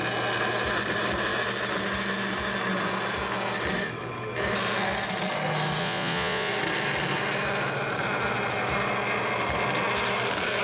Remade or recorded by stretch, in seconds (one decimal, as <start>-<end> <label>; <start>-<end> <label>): 0.0-5.8 recorded; 5.8-6.5 remade; 6.5-10.6 recorded